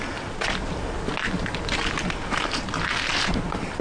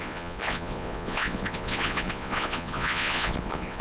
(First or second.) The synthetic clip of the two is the second